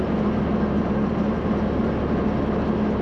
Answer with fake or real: real